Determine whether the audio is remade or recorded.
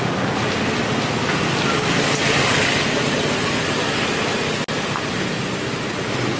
recorded